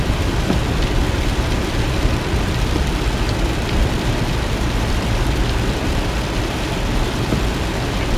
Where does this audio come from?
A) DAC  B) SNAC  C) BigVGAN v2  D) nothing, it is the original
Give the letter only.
C